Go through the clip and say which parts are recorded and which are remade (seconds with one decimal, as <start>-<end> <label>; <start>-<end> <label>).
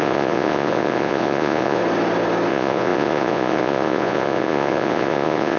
0.0-1.8 remade; 1.8-2.5 recorded; 2.5-5.6 remade